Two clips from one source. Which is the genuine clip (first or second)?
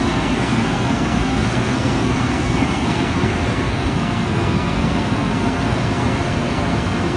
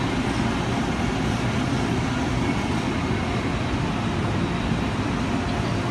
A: second